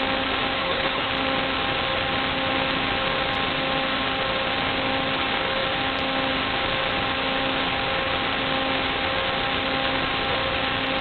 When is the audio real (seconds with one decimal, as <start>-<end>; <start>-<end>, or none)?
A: 0.0-0.6; 1.1-11.0